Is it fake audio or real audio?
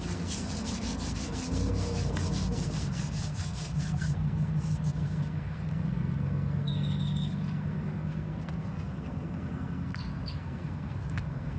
fake